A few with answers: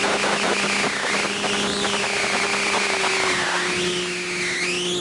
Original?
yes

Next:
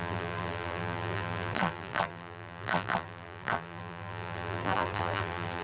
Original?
no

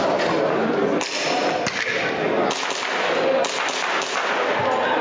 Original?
yes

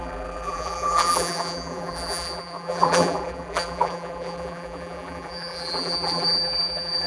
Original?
no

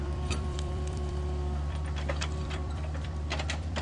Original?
no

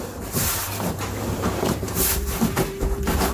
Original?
no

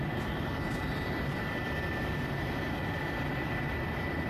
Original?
yes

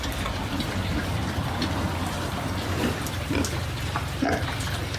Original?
no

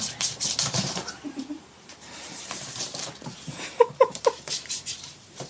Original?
no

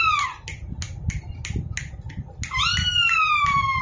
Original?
yes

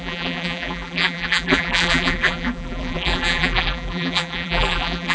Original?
no